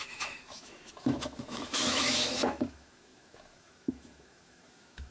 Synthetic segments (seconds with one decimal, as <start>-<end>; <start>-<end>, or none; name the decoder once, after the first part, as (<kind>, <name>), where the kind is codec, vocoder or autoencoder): 0.0-5.1 (autoencoder, DAC-VAE)